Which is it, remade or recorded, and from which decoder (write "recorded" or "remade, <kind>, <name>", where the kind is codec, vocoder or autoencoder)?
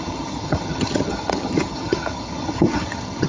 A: remade, vocoder, HiFi-GAN